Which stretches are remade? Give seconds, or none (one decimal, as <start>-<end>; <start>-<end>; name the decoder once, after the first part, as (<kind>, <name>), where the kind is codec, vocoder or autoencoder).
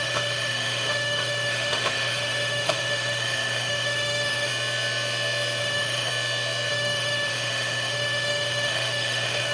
0.0-4.5 (autoencoder, DAC-VAE); 5.6-6.1; 6.7-9.5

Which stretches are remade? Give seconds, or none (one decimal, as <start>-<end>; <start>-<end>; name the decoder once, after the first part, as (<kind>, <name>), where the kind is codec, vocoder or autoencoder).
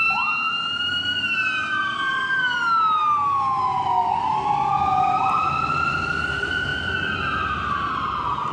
none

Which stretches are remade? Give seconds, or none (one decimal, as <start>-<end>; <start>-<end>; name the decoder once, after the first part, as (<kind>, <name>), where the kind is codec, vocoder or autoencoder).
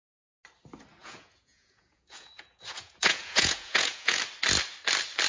1.0-4.2 (vocoder, Vocos)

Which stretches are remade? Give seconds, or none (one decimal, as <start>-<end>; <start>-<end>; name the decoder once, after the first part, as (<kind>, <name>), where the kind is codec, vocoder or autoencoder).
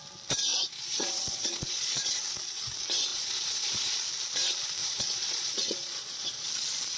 0.5-2.2 (vocoder, Vocos); 3.1-3.9; 4.8-6.5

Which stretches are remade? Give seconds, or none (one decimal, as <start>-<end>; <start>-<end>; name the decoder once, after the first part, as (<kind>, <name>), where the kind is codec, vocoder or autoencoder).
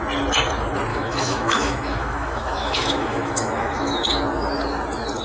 0.9-4.0 (autoencoder, DAC-VAE)